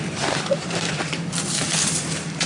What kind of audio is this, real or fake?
fake